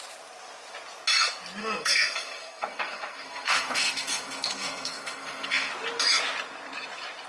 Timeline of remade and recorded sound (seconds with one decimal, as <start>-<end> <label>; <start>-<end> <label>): 0.0-1.6 recorded; 1.6-5.7 remade; 5.7-7.3 recorded